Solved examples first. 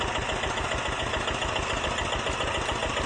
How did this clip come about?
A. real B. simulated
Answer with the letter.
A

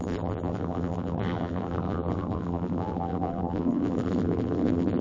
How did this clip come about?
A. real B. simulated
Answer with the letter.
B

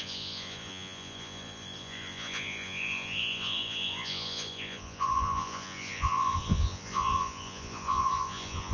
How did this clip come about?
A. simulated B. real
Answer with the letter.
A